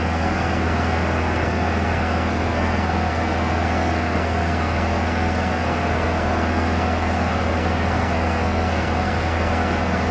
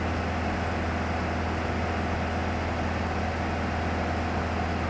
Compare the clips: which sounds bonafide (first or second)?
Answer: second